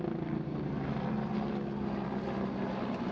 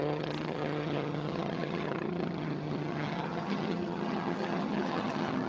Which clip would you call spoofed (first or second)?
second